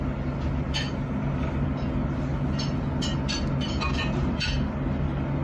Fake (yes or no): no